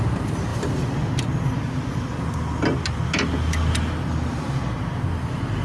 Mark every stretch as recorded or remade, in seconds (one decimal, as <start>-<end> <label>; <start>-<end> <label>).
0.0-0.5 recorded; 0.5-1.1 remade; 1.1-5.6 recorded